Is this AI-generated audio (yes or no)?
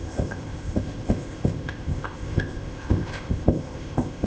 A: yes